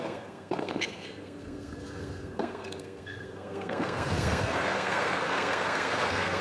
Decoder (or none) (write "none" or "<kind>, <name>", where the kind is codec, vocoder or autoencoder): codec, SNAC